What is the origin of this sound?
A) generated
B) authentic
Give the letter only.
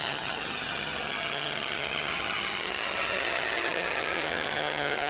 A